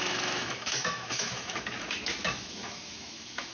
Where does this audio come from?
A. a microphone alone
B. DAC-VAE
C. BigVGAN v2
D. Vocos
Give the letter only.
B